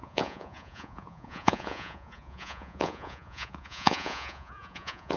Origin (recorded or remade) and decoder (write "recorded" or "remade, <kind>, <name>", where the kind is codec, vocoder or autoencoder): remade, vocoder, Vocos